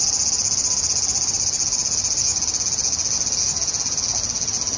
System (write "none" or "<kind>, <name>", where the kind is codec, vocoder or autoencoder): none